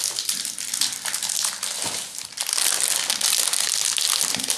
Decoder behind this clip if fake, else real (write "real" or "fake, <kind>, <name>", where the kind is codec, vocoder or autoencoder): real